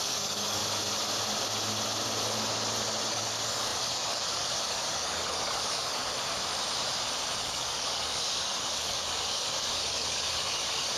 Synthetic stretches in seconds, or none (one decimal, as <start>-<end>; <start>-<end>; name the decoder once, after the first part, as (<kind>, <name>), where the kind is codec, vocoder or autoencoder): 0.0-0.6 (codec, DAC); 3.1-6.1; 7.4-11.0